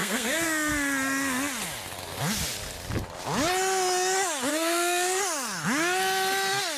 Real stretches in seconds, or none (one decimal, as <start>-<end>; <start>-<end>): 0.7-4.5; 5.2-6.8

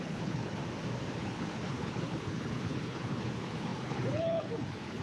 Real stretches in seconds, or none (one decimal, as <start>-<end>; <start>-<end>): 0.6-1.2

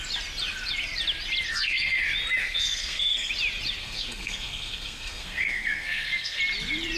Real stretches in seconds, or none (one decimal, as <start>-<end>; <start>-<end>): 0.0-1.5; 2.0-2.4; 3.3-3.8; 6.4-7.0

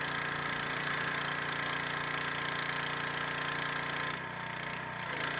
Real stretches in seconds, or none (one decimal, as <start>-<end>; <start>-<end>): 0.0-5.4

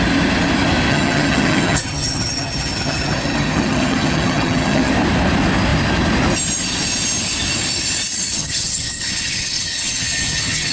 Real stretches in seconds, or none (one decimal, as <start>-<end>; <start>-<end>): 0.0-0.9; 4.9-8.3

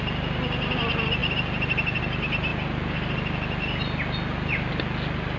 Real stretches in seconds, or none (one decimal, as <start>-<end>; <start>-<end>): 0.0-5.4

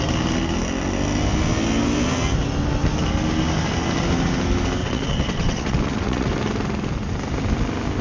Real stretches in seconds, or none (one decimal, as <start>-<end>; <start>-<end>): 0.0-4.8; 6.3-8.0

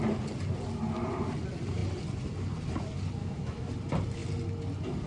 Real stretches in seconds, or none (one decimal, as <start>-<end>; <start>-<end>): 0.0-3.2; 3.7-5.1